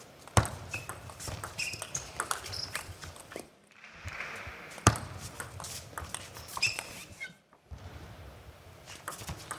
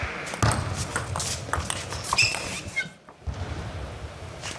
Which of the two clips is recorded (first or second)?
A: second